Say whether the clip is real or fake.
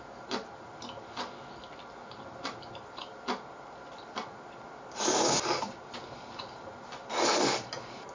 real